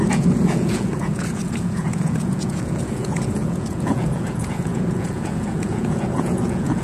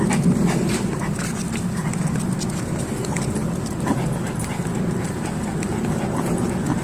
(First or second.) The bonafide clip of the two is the second